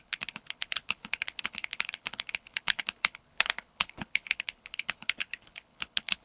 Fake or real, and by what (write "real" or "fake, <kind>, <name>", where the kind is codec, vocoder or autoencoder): fake, codec, HILCodec